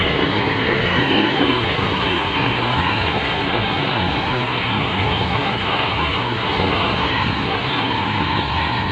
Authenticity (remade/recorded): remade